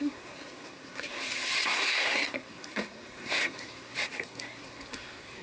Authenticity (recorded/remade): remade